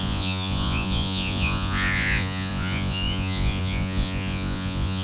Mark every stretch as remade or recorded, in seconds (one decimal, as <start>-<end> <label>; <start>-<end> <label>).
0.0-5.0 remade